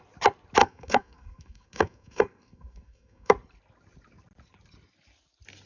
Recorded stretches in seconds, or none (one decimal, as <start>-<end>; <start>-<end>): 0.0-0.6; 3.3-5.7